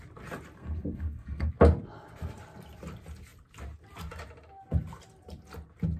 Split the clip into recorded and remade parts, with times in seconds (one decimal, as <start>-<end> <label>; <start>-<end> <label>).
0.0-0.6 recorded; 0.6-1.5 remade; 1.5-6.0 recorded